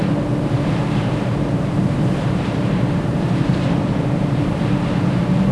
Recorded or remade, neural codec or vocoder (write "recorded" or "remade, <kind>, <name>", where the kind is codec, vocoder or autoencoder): remade, vocoder, BigVGAN v2